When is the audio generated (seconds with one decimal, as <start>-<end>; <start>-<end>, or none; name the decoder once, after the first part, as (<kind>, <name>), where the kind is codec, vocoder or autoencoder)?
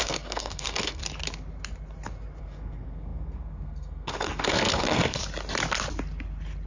0.0-1.0 (codec, SNAC); 2.4-5.2